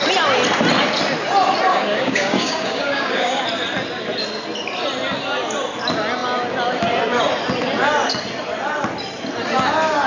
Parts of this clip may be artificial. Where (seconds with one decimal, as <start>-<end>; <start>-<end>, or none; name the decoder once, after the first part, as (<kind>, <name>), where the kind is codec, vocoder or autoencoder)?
1.7-3.4 (codec, DAC)